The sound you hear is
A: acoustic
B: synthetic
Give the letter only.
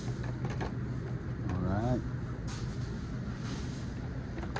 A